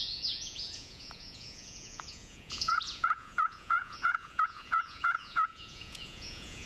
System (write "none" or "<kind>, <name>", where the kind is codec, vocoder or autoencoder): vocoder, Vocos